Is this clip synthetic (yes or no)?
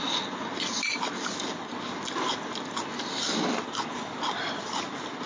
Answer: no